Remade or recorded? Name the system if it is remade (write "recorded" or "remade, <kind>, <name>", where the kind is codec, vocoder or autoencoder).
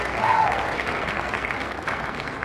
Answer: remade, codec, SNAC